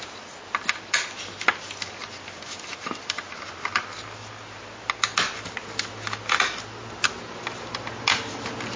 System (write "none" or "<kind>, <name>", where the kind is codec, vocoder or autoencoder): none